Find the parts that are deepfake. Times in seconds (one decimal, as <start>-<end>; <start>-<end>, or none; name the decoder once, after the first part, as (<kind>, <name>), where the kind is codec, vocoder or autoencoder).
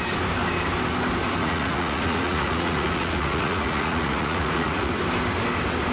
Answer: 1.4-4.9 (vocoder, Vocos)